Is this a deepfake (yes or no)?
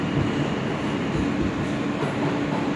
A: no